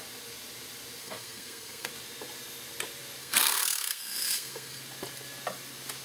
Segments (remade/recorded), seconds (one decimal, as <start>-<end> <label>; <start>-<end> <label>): 0.0-1.0 recorded; 1.0-1.9 remade; 1.9-3.2 recorded; 3.2-4.8 remade; 4.8-6.0 recorded